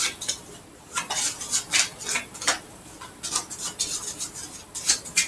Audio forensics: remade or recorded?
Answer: recorded